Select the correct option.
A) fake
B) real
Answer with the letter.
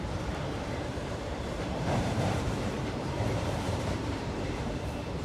A